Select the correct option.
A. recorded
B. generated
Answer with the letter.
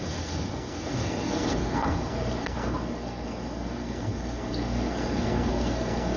B